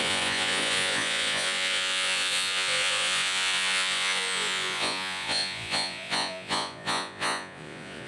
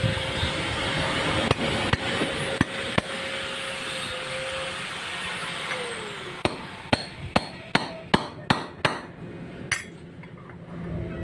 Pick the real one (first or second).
second